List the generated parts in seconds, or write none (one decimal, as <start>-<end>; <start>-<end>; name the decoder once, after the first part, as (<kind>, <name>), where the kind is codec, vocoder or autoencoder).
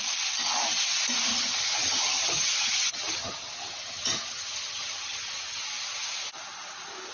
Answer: 1.3-5.6 (vocoder, HiFi-GAN)